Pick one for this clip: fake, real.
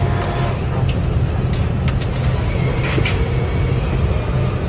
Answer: real